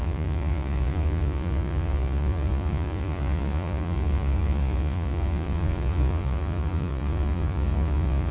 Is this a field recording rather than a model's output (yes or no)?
no